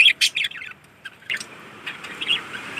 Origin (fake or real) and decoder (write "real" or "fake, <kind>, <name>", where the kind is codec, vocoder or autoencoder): fake, vocoder, BigVGAN v2